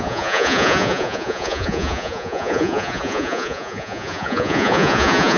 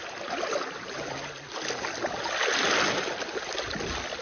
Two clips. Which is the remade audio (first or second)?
first